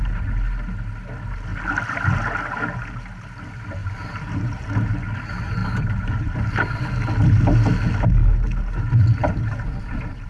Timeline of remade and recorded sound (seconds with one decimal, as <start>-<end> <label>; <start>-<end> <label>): 0.0-3.8 recorded; 3.8-4.9 remade; 4.9-5.6 recorded; 5.6-6.9 remade; 6.9-9.2 recorded; 9.2-10.3 remade